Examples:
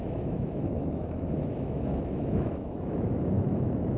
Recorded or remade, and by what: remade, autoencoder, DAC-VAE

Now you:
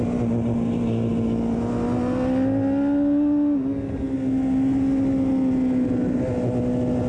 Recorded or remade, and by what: recorded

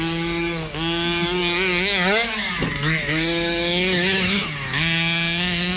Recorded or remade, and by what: remade, autoencoder, DAC-VAE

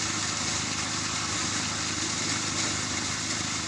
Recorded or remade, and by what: recorded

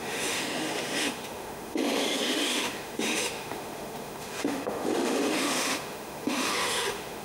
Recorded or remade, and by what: remade, autoencoder, DAC-VAE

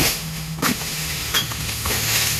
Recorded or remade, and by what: remade, autoencoder, DAC-VAE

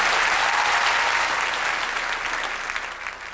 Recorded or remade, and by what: recorded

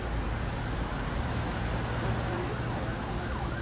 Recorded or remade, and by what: recorded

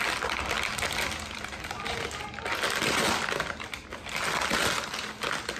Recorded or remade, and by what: recorded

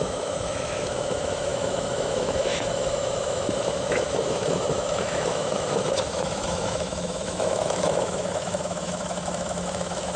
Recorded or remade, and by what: remade, autoencoder, DAC-VAE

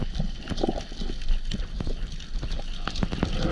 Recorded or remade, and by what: recorded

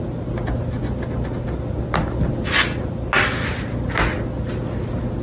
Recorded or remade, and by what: recorded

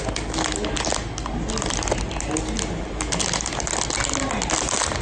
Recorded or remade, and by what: recorded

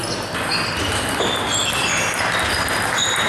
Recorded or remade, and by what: recorded